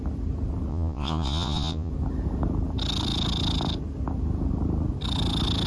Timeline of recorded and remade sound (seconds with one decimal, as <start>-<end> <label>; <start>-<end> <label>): 0.0-0.7 recorded; 0.7-1.9 remade; 1.9-5.7 recorded